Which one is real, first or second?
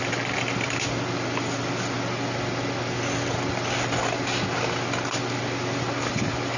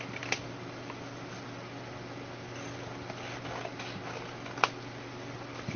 second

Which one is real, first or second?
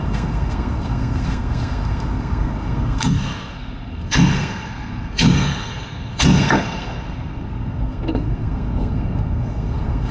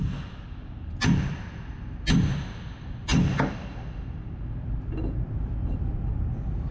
second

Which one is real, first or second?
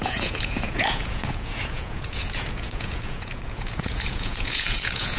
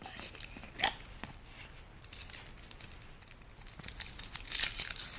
second